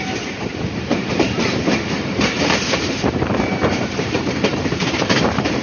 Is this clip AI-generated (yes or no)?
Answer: yes